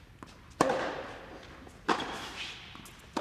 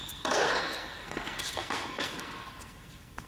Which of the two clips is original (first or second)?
first